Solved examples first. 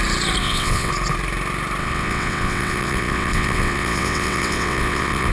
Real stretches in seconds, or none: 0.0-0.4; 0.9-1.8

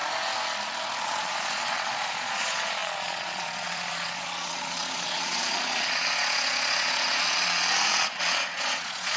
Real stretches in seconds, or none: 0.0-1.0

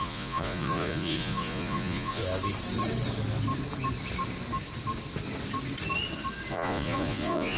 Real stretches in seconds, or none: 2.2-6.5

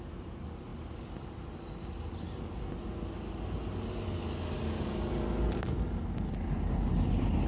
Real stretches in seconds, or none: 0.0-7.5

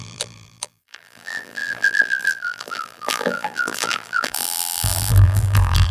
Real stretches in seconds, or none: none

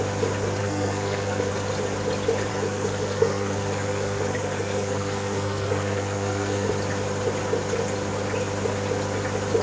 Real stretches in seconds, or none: 0.0-0.6; 1.5-2.5; 6.7-9.6

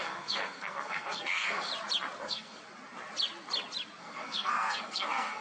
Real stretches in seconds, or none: 1.7-2.2; 2.6-4.0